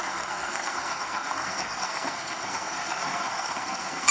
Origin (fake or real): fake